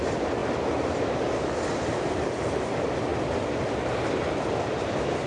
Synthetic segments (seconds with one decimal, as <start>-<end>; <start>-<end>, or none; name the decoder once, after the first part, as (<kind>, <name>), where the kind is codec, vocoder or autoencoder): none